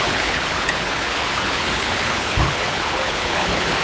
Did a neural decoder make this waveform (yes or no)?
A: yes